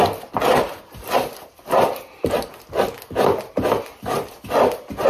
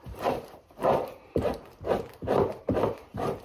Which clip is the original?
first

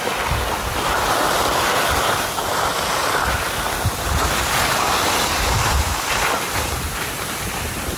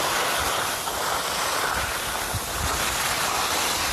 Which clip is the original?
second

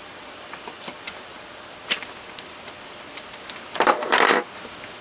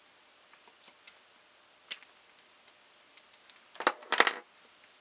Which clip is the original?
second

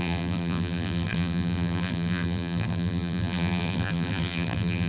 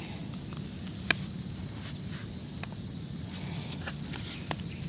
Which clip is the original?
second